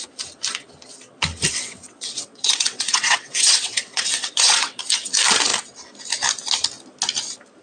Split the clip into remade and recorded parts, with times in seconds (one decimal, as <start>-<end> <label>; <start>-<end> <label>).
0.0-1.3 recorded; 1.3-4.8 remade; 4.8-7.6 recorded